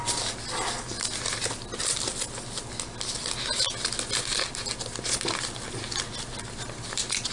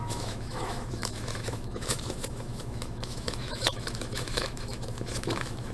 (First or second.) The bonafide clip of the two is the first